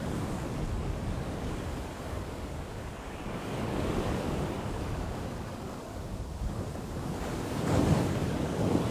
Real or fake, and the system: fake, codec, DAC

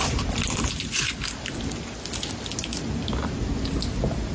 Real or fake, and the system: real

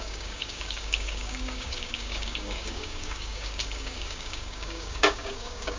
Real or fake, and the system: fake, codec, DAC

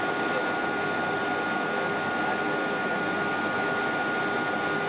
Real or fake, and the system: real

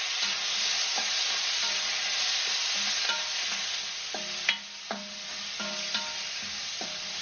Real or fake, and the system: real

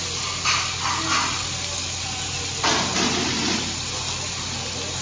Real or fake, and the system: real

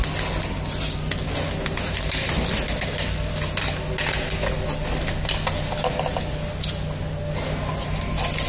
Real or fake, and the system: real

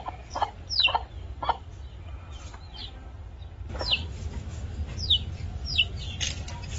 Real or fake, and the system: real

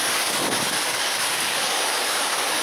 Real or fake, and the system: fake, codec, DAC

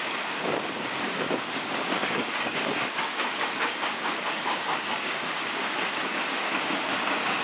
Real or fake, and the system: fake, codec, DAC